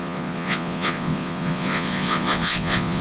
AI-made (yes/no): yes